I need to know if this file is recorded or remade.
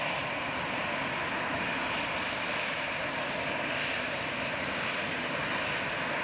recorded